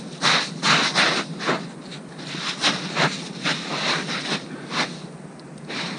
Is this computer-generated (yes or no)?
no